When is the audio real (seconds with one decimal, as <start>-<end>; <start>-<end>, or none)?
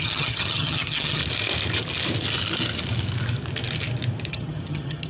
1.2-4.3